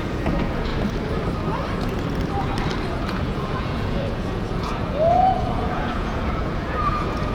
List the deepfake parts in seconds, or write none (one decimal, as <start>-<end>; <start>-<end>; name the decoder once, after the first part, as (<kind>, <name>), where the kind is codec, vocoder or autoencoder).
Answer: 0.0-0.7 (vocoder, Vocos); 2.9-7.3